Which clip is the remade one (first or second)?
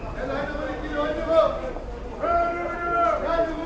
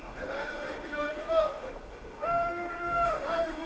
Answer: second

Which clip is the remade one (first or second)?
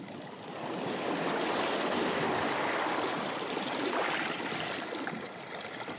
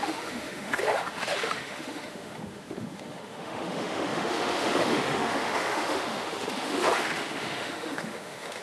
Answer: second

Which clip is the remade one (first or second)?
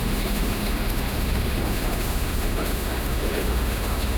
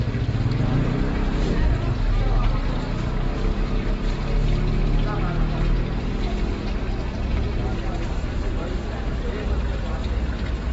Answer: first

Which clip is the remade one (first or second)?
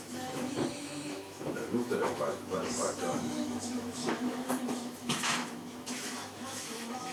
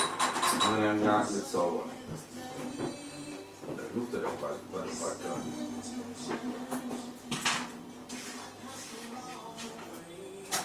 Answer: first